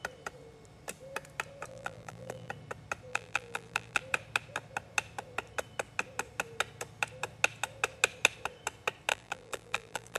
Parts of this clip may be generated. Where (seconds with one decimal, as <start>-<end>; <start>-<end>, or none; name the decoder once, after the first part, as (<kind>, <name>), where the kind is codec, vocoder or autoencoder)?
1.7-2.5 (vocoder, BigVGAN v2); 3.1-4.0; 9.1-10.2